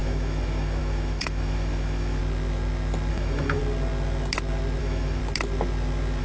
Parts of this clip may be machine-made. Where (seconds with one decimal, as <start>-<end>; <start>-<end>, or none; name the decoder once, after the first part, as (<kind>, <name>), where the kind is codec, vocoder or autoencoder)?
0.0-2.2 (autoencoder, DAC-VAE); 3.1-3.6; 4.8-5.2